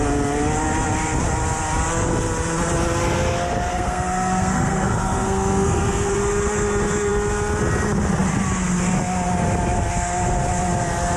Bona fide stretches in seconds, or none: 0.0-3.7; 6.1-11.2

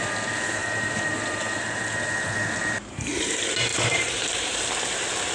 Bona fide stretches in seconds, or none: 0.0-0.6; 1.8-3.7; 4.7-5.3